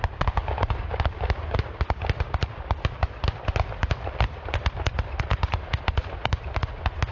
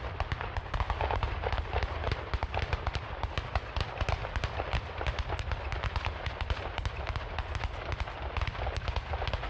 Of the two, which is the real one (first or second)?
second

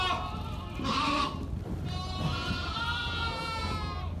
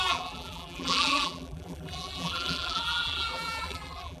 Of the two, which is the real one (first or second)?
first